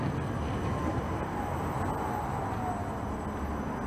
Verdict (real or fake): real